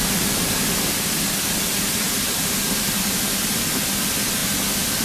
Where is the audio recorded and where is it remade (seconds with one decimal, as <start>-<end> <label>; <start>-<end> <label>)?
0.0-5.0 recorded